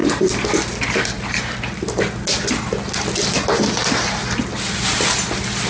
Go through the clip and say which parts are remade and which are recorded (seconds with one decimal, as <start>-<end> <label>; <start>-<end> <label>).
0.0-5.7 recorded